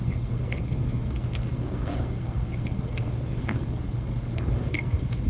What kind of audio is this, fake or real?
fake